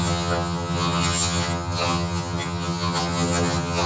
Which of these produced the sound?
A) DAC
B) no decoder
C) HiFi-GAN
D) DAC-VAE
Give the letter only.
C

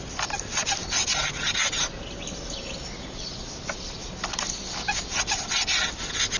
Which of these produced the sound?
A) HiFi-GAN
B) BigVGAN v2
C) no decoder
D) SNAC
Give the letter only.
C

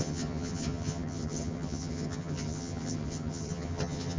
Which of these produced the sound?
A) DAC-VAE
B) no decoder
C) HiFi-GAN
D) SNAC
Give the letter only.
C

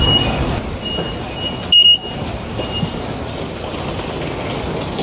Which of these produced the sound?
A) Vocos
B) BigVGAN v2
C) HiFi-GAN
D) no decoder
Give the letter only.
D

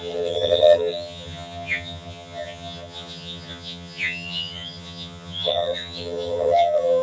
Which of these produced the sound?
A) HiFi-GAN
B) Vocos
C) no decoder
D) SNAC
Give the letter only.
A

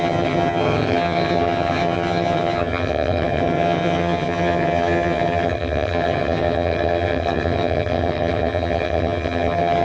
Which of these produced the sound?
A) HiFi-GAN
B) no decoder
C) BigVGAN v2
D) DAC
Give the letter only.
A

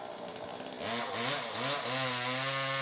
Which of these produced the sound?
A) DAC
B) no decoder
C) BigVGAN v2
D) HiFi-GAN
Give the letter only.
B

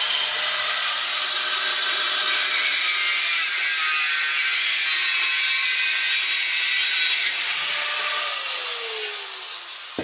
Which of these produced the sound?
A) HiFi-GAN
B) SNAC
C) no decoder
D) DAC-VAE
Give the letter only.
C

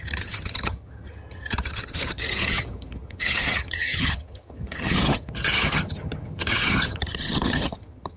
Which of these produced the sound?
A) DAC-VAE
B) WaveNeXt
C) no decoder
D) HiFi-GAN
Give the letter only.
D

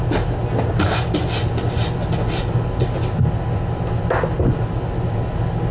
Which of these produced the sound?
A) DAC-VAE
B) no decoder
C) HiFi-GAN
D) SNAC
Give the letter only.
B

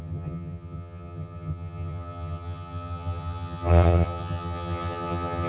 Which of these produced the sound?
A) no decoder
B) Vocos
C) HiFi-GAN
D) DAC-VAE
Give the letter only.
C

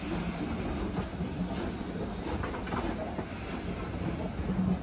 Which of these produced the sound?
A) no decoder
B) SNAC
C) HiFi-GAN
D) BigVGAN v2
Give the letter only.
A